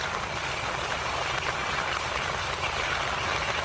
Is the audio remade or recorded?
recorded